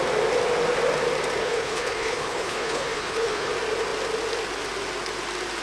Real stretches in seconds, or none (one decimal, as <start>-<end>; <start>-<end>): 0.0-1.4; 3.5-5.6